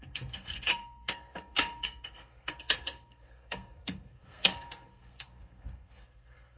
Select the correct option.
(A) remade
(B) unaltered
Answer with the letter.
A